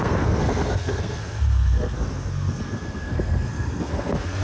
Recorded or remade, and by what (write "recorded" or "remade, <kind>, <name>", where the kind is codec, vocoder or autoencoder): remade, codec, SNAC